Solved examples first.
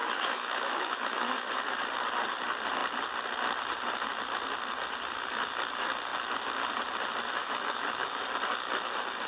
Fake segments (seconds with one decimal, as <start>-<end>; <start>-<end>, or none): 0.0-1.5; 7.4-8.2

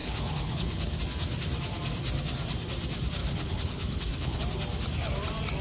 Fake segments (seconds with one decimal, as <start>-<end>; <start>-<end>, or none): 0.0-1.0; 3.2-4.4

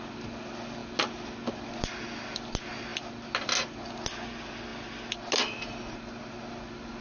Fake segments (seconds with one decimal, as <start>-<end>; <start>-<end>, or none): none